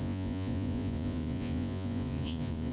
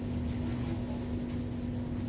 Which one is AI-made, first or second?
first